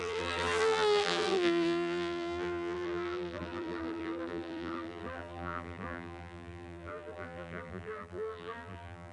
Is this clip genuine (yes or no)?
no